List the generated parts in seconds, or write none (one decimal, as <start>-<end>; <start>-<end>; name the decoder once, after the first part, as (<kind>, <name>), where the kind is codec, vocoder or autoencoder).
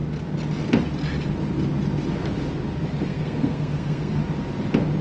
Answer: 3.0-4.2 (codec, SNAC)